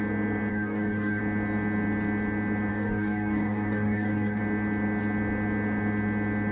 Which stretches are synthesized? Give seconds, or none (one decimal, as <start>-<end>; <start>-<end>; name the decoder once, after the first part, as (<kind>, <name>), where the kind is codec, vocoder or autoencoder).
0.5-1.2 (codec, DAC); 2.7-4.4